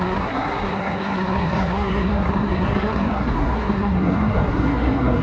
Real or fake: fake